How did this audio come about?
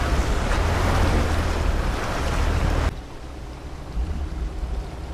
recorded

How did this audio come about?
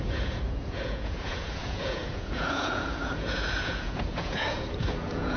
remade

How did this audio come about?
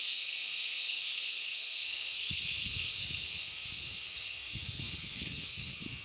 remade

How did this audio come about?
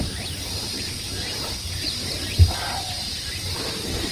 remade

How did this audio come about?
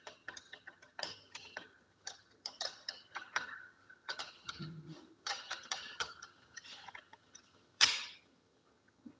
remade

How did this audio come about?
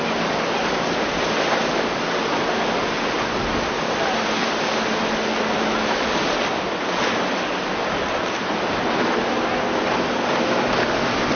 recorded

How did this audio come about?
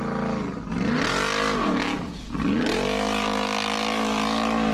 recorded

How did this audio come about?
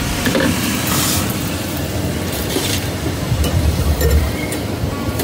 remade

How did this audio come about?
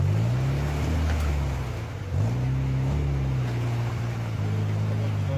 recorded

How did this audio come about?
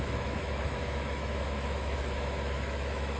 remade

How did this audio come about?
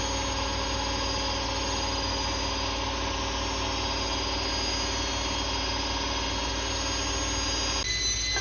recorded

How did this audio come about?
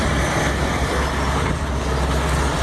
recorded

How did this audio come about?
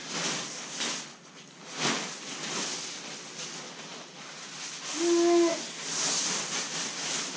recorded